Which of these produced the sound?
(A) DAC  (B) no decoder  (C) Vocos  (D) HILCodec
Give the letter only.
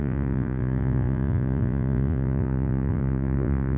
C